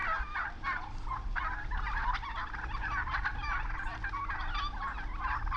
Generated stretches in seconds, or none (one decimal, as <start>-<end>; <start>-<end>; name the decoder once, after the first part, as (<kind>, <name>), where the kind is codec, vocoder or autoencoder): none